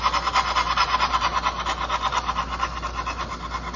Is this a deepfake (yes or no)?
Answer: no